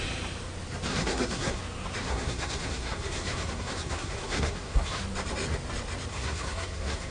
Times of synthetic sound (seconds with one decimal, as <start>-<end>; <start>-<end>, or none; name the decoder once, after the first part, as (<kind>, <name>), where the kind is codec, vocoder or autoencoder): 0.9-1.6 (codec, SNAC); 2.0-5.0; 6.1-7.1